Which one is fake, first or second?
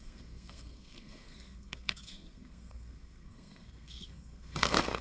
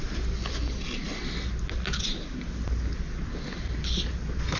first